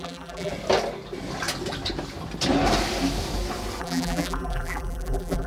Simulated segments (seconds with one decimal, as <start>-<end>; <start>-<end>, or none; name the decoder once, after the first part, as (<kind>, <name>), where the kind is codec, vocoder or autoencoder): 0.0-0.5 (vocoder, BigVGAN v2); 3.8-5.5